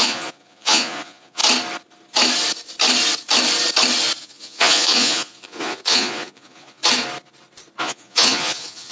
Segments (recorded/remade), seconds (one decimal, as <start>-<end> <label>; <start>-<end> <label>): 0.0-1.4 remade; 1.4-4.2 recorded; 4.2-6.8 remade; 6.8-7.8 recorded; 7.8-8.9 remade